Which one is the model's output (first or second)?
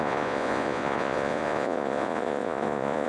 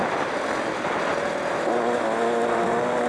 first